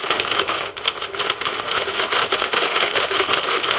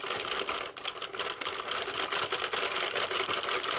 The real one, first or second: second